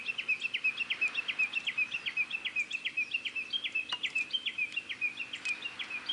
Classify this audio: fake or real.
real